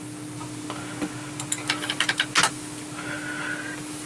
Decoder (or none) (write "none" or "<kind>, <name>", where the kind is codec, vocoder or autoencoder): none